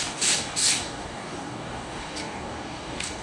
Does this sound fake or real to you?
fake